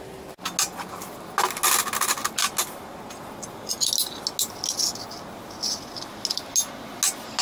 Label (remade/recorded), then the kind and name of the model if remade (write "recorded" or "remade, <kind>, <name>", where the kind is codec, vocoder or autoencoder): recorded